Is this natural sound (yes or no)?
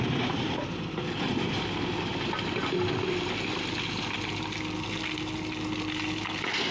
yes